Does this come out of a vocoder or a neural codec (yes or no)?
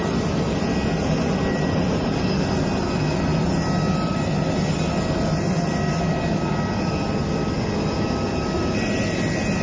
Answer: no